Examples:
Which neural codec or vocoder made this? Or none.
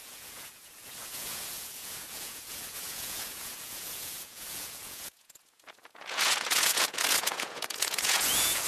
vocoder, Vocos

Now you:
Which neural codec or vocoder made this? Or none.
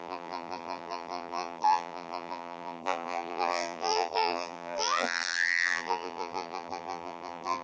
vocoder, BigVGAN v2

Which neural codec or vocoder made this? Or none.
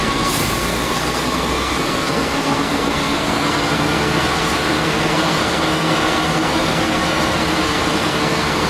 codec, SNAC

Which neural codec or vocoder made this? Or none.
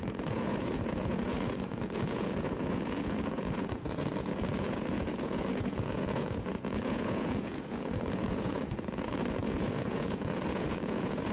vocoder, Vocos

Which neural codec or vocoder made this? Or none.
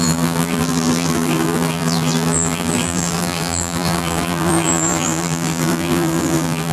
vocoder, BigVGAN v2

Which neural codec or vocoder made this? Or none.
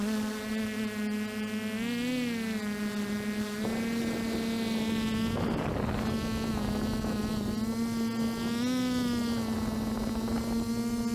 none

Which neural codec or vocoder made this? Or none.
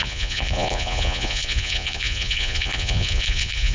vocoder, Vocos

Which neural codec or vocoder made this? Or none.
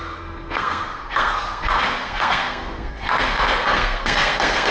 codec, SNAC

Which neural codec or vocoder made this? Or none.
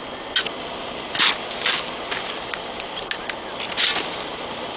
none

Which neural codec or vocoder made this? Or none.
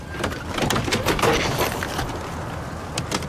none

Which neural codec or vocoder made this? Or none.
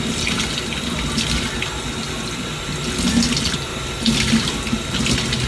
none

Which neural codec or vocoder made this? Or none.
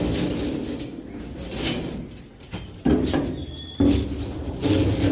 none